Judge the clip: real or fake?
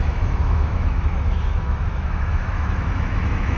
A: fake